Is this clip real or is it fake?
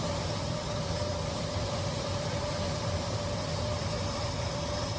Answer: real